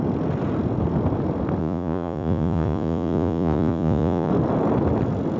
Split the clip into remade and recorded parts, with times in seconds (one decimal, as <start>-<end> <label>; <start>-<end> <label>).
0.0-1.6 recorded; 1.6-4.3 remade; 4.3-5.4 recorded